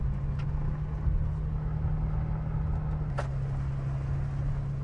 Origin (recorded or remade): recorded